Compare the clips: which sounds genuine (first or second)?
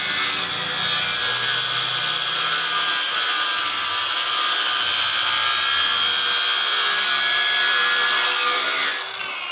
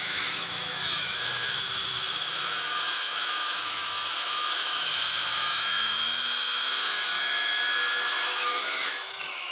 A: first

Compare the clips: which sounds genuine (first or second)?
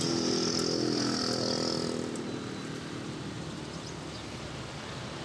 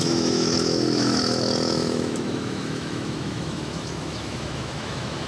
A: first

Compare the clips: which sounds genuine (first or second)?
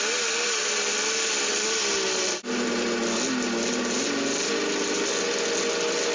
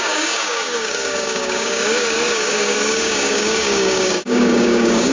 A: first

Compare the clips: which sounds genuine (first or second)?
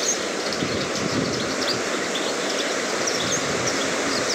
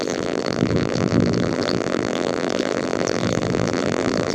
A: first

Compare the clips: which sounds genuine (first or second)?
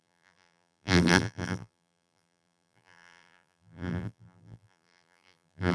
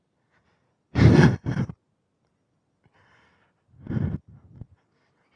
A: second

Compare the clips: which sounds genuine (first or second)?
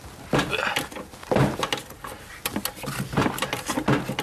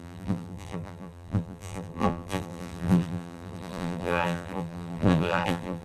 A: first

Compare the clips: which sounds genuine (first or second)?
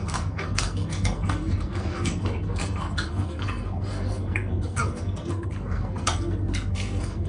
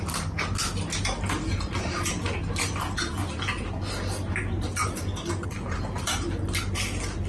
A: second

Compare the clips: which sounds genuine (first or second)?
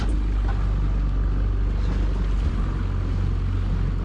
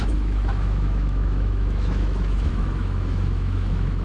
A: first